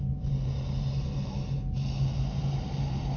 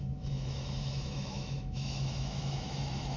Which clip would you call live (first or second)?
first